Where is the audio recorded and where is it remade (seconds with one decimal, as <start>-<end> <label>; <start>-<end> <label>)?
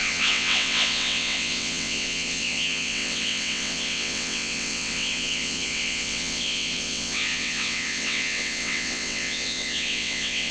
0.0-10.5 remade